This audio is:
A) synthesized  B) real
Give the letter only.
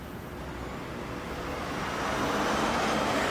B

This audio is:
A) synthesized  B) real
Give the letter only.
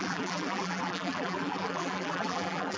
A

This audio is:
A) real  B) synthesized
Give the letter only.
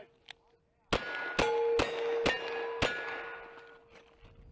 A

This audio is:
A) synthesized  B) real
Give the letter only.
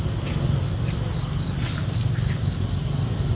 B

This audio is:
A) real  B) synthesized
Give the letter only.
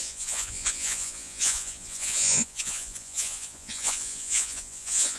B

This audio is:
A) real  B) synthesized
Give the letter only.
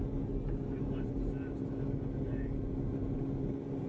A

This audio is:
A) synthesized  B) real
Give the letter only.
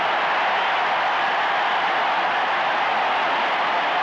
B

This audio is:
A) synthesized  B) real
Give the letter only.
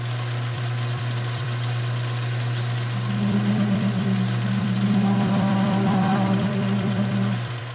A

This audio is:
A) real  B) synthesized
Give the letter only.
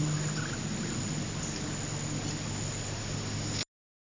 A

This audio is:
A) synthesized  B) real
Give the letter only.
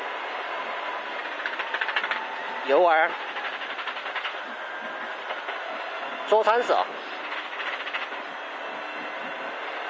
B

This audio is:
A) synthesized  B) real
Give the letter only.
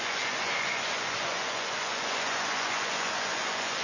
A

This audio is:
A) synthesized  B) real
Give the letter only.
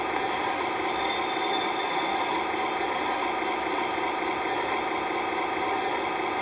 B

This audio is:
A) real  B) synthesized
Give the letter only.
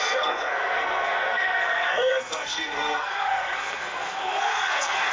B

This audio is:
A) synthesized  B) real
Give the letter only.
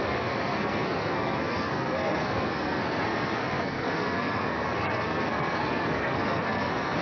A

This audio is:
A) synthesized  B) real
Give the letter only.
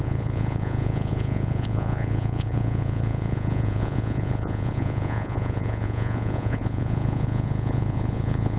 A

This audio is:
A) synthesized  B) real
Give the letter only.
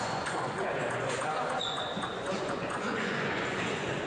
A